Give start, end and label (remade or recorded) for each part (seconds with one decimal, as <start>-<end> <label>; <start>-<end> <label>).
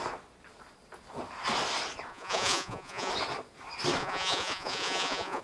0.0-2.1 recorded; 2.1-3.1 remade; 3.1-4.0 recorded; 4.0-5.4 remade